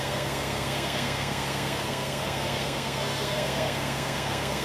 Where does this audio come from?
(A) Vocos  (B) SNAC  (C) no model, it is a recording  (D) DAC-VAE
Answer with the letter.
B